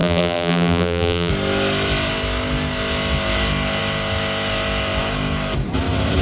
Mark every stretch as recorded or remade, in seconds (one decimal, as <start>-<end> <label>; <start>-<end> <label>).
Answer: 0.0-1.3 remade; 1.3-6.2 recorded